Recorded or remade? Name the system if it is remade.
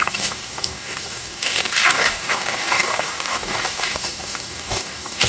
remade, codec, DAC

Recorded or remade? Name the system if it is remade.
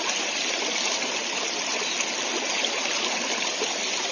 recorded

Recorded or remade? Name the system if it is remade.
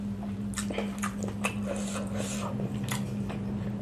recorded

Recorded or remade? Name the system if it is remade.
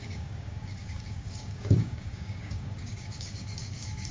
remade, codec, DAC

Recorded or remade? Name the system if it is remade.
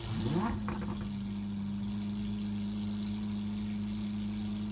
recorded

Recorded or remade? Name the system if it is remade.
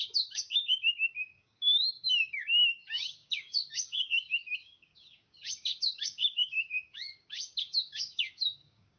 remade, codec, DAC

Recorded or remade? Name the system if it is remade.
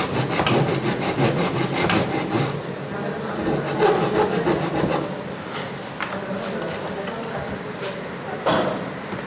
recorded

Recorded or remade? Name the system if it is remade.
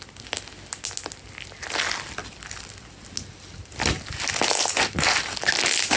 recorded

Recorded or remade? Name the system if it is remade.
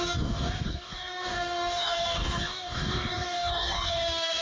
remade, codec, DAC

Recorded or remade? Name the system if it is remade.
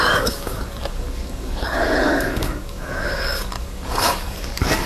remade, codec, DAC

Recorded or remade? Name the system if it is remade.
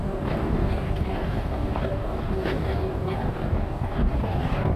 remade, codec, DAC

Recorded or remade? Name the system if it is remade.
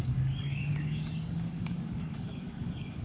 remade, codec, DAC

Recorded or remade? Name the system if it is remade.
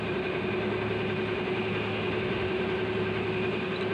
recorded